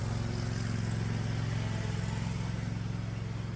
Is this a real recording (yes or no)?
yes